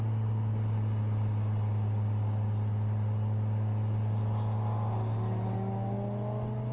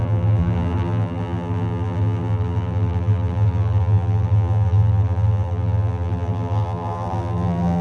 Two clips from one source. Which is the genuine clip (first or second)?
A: first